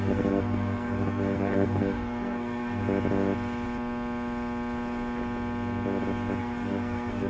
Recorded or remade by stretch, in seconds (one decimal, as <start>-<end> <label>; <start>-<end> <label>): 0.0-2.8 remade; 2.8-6.4 recorded; 6.4-7.3 remade